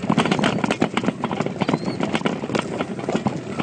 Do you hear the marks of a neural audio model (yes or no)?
no